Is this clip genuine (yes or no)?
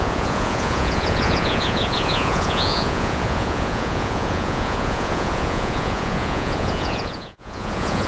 no